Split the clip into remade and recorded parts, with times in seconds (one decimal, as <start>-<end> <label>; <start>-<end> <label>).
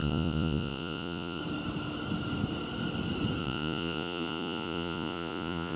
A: 0.0-1.4 remade; 1.4-3.4 recorded; 3.4-5.8 remade